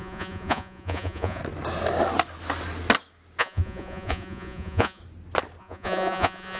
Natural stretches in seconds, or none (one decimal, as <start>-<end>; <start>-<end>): 1.4-3.4; 5.0-5.6